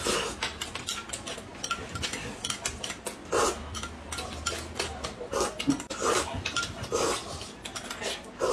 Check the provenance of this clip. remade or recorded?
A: recorded